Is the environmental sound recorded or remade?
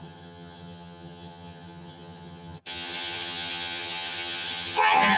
remade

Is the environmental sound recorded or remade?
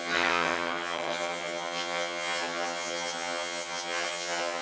remade